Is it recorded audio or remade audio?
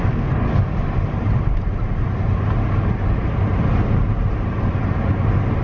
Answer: recorded